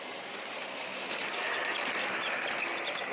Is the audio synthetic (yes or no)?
yes